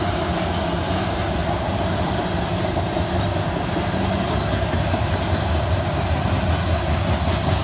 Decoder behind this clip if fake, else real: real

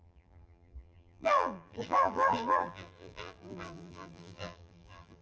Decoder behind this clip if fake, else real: fake, vocoder, BigVGAN v2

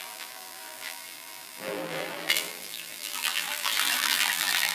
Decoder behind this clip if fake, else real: fake, vocoder, BigVGAN v2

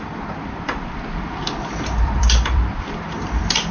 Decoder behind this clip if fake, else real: fake, vocoder, BigVGAN v2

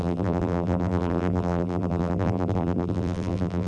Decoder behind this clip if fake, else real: fake, vocoder, BigVGAN v2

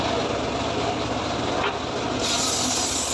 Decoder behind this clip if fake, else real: real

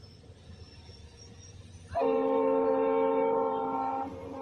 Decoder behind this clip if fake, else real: fake, vocoder, BigVGAN v2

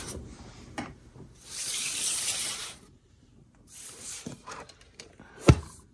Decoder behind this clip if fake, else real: fake, vocoder, BigVGAN v2